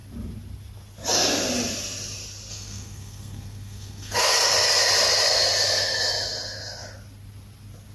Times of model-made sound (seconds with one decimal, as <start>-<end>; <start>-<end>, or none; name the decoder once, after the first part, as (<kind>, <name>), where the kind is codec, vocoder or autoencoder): 2.5-4.2 (codec, SNAC)